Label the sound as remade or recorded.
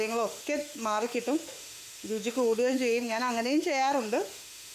remade